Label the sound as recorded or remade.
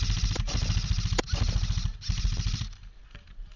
recorded